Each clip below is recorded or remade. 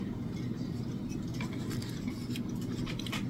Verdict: recorded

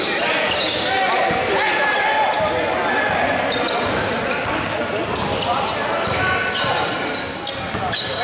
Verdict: recorded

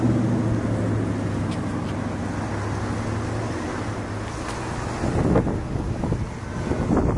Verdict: recorded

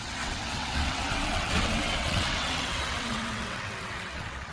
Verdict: remade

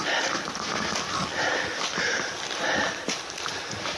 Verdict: recorded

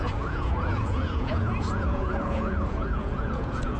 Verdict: remade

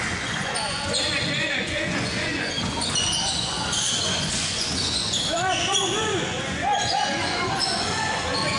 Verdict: remade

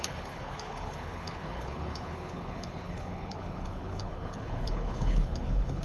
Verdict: remade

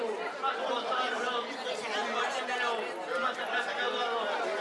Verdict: recorded